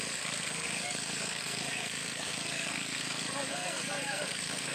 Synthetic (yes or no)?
yes